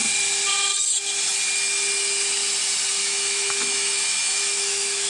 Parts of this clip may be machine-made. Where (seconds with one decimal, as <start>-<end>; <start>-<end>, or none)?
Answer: 3.0-5.1